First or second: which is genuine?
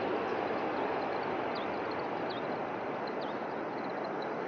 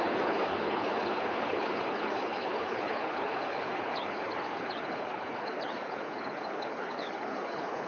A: first